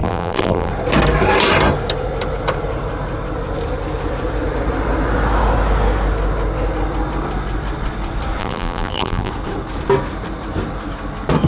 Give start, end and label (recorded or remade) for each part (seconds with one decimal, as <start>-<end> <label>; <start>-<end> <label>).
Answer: 0.0-0.7 remade; 0.7-8.4 recorded; 8.4-9.3 remade; 9.3-11.5 recorded